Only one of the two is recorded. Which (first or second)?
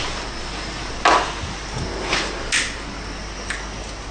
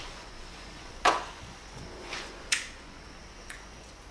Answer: first